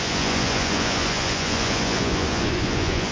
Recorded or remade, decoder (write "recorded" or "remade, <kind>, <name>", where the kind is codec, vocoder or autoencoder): remade, vocoder, Vocos